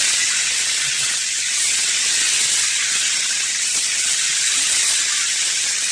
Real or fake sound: fake